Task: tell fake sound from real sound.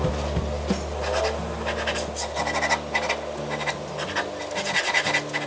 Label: real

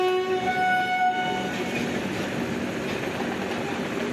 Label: real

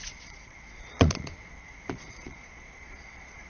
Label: fake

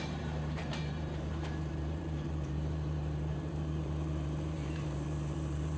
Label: fake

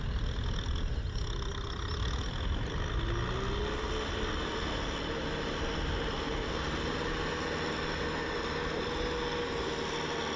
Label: real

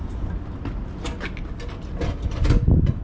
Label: real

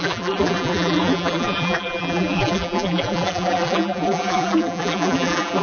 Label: fake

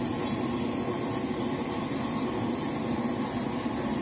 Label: real